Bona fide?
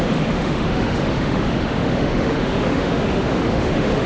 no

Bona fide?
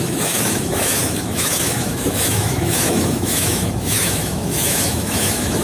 no